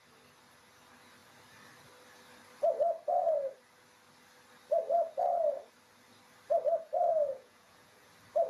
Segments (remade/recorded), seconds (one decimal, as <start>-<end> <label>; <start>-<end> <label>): 0.0-7.1 recorded; 7.1-8.1 remade; 8.1-8.5 recorded